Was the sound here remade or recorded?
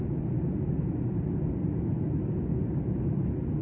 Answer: recorded